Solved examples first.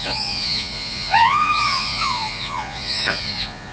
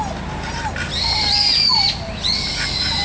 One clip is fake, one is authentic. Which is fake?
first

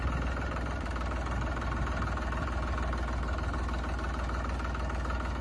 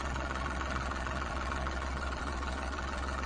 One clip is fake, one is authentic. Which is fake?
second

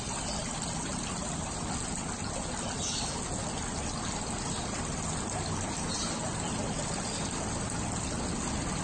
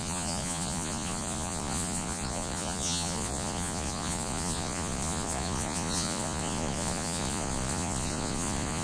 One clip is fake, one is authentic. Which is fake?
second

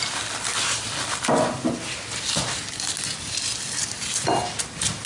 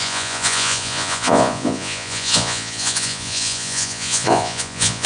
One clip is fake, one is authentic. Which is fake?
second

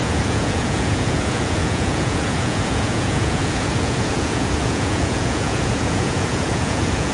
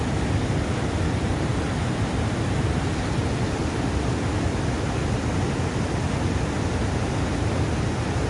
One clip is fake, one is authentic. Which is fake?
first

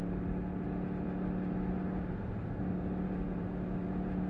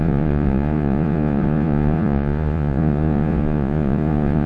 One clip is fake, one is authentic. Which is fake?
second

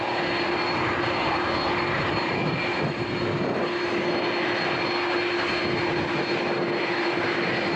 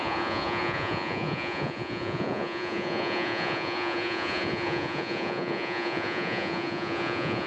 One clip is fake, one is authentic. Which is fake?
second